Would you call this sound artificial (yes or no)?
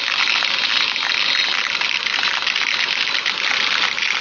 no